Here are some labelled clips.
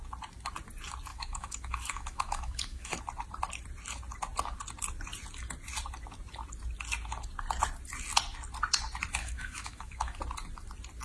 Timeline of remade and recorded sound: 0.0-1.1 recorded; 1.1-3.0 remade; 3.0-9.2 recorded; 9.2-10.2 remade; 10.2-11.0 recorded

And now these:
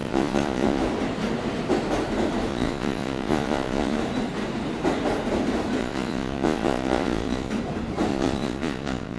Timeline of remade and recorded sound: 0.0-0.8 remade; 0.8-2.5 recorded; 2.5-4.0 remade; 4.0-5.8 recorded; 5.8-7.5 remade; 7.5-8.1 recorded; 8.1-9.2 remade

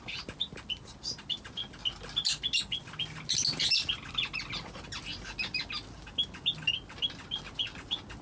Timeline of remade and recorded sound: 0.0-8.2 recorded

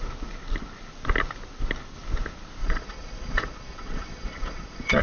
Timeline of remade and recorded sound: 0.0-2.6 recorded; 2.6-5.0 remade